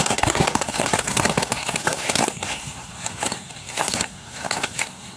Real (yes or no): no